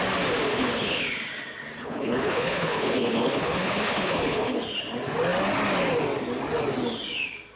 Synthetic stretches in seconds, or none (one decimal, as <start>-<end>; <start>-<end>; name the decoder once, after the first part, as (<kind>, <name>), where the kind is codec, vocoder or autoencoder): 0.5-1.0 (codec, HILCodec); 1.8-4.6